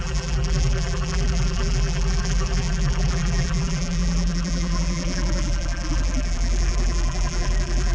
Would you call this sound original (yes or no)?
no